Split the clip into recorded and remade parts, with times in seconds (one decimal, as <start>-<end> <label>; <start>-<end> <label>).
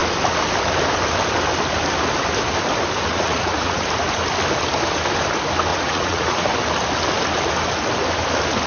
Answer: 0.0-3.1 recorded; 3.1-3.8 remade; 3.8-5.7 recorded; 5.7-6.5 remade; 6.5-8.7 recorded